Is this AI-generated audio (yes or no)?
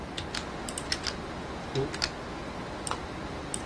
no